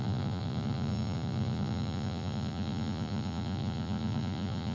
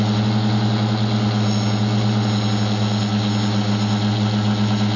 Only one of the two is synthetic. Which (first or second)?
first